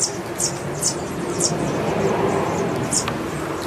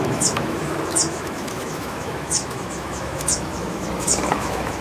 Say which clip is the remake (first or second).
second